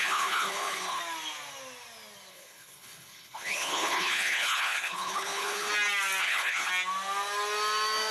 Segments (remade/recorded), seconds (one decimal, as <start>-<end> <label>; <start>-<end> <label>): 0.0-1.0 remade; 1.0-2.3 recorded; 2.3-5.7 remade; 5.7-6.2 recorded; 6.2-6.7 remade; 6.7-8.1 recorded